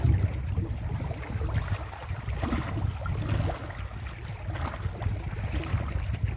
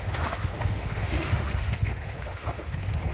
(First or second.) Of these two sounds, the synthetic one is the second